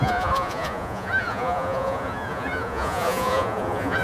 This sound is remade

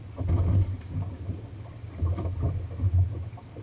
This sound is recorded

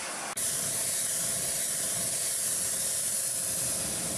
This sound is remade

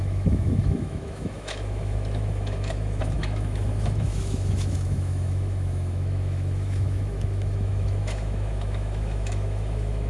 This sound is remade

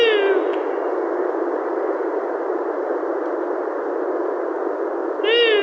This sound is recorded